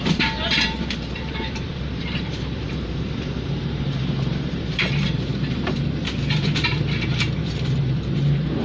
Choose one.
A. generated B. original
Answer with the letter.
A